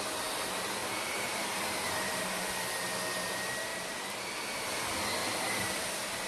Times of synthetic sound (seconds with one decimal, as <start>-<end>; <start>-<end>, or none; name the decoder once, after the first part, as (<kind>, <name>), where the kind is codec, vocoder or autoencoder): 0.8-2.5 (vocoder, BigVGAN v2); 3.7-4.4; 5.2-6.3